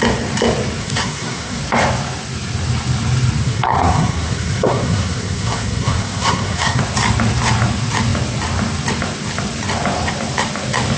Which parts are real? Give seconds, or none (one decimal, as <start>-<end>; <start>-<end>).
0.0-0.8; 1.6-3.4; 6.8-11.0